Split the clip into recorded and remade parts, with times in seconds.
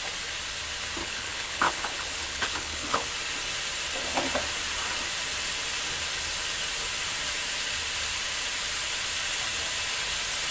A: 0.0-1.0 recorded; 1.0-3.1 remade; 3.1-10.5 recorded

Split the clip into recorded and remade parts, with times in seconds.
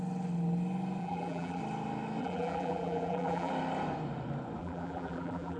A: 0.0-1.0 recorded; 1.0-1.6 remade; 1.6-2.2 recorded; 2.2-3.5 remade; 3.5-4.6 recorded; 4.6-5.6 remade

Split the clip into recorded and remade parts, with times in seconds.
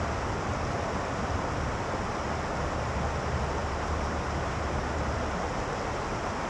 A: 0.0-3.6 recorded; 3.6-4.8 remade; 4.8-6.5 recorded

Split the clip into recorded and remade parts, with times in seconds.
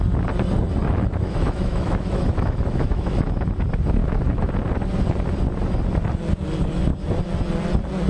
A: 0.0-0.8 recorded; 0.8-3.5 remade; 3.5-4.0 recorded; 4.0-4.5 remade; 4.5-8.1 recorded